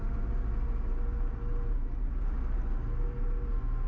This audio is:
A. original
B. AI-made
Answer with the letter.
A